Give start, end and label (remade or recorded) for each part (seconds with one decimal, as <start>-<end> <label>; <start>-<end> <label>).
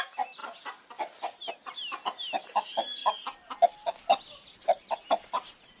0.0-5.8 recorded